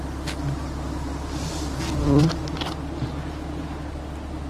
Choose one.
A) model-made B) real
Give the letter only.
B